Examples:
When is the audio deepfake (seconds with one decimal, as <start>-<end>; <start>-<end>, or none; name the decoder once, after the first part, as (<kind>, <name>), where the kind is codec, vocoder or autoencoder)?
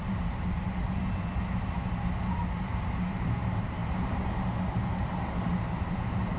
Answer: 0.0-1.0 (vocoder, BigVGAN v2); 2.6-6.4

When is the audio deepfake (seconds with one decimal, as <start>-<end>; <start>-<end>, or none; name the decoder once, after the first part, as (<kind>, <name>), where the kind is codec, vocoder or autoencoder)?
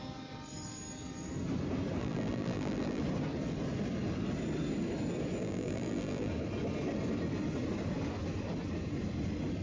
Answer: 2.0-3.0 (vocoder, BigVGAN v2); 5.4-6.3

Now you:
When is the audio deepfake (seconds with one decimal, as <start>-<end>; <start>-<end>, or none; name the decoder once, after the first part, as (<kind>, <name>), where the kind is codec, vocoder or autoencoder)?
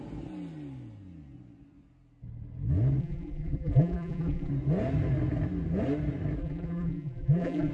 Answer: 3.0-4.5 (vocoder, BigVGAN v2); 6.4-7.7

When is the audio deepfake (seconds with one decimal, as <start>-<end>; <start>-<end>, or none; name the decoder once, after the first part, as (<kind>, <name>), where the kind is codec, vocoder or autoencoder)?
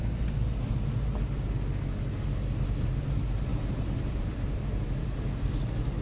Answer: 3.5-5.6 (vocoder, BigVGAN v2)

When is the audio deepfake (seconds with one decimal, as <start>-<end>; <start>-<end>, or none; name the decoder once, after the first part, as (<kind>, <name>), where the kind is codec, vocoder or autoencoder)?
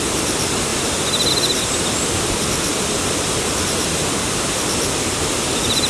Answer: none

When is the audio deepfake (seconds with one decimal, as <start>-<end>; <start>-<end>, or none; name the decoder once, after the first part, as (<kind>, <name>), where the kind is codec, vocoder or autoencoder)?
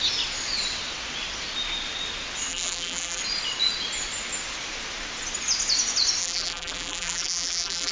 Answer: 2.5-3.2 (vocoder, BigVGAN v2); 6.2-7.9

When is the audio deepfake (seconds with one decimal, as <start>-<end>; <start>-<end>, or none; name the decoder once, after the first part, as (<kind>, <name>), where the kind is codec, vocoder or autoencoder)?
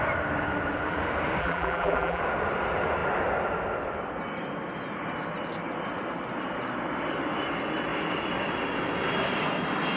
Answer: 1.4-2.2 (vocoder, BigVGAN v2)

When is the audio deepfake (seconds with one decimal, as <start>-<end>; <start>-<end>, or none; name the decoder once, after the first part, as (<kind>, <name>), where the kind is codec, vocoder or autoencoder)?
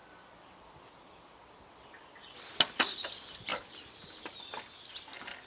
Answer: 3.5-4.7 (vocoder, BigVGAN v2)